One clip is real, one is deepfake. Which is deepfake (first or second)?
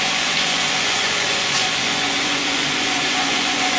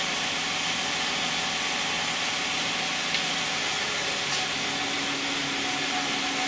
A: first